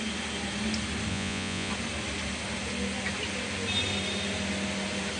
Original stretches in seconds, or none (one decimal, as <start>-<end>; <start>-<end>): 0.0-1.1; 1.7-5.2